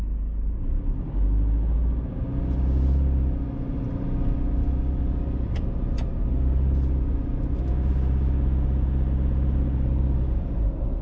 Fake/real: real